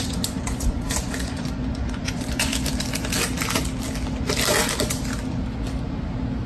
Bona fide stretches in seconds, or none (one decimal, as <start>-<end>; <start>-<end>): 2.5-6.5